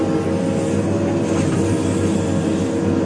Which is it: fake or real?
real